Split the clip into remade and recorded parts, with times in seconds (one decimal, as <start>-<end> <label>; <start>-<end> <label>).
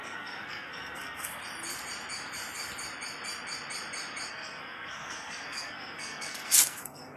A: 0.0-1.4 remade; 1.4-4.3 recorded; 4.3-7.2 remade